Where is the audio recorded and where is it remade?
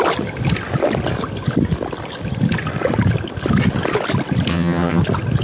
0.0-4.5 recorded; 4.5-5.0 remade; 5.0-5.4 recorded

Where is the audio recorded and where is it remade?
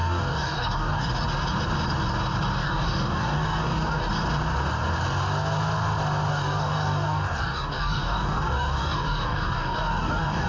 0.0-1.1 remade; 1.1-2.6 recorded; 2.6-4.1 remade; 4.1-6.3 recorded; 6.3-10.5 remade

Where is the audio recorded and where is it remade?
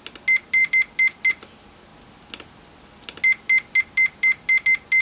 0.0-5.0 recorded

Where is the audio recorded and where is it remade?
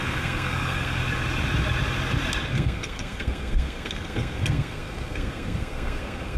0.0-1.0 remade; 1.0-2.5 recorded; 2.5-6.4 remade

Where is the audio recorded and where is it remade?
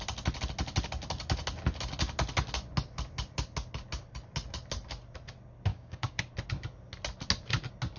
0.0-5.7 recorded; 5.7-6.2 remade; 6.2-8.0 recorded